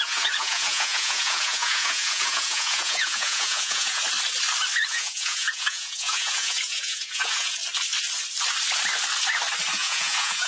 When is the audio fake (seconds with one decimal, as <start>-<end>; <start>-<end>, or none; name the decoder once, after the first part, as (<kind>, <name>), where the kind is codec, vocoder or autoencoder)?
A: 0.0-4.0 (vocoder, Vocos); 4.9-7.6; 9.7-10.5